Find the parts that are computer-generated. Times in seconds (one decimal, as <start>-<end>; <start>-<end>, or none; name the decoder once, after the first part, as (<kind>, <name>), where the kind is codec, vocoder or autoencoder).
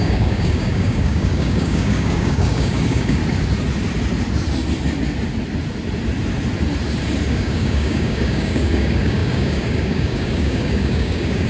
0.0-3.2 (codec, DAC); 7.3-11.5